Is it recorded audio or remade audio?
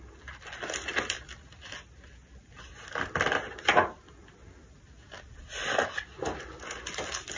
recorded